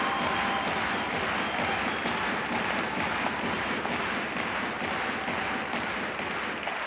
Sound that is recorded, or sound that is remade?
recorded